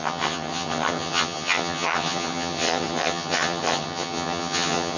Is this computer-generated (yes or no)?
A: yes